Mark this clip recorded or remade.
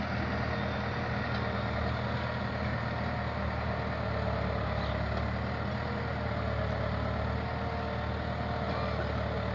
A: recorded